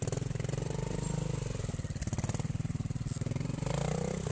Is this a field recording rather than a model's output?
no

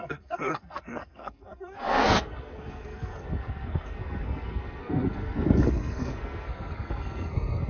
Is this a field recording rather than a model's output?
no